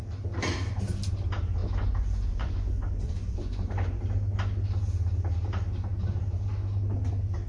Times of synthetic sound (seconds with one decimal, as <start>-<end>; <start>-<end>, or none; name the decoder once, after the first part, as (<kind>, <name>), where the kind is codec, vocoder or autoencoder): 1.6-4.0 (vocoder, Vocos)